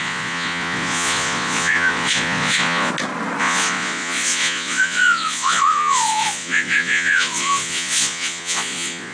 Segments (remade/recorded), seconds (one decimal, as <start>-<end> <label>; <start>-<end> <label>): 0.0-2.9 remade; 2.9-3.4 recorded; 3.4-9.1 remade